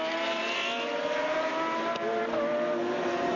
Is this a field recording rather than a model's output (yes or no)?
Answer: yes